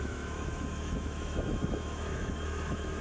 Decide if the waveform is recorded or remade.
remade